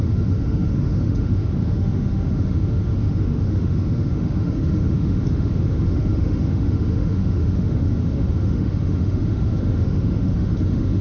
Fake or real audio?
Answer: fake